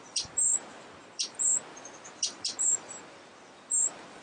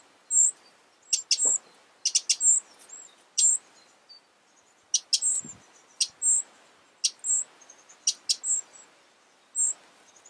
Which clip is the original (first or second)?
second